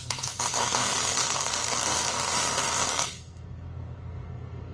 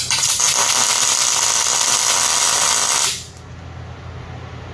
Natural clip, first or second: second